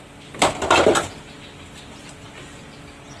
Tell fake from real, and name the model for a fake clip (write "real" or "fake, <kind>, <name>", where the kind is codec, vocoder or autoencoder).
real